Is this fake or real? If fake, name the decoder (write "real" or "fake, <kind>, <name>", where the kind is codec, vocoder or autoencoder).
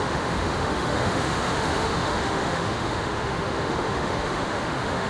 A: fake, autoencoder, DAC-VAE